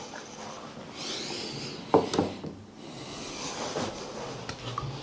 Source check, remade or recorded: recorded